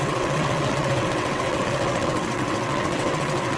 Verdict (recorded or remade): remade